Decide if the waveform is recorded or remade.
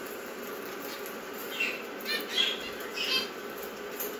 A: recorded